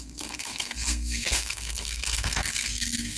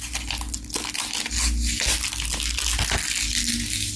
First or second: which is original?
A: second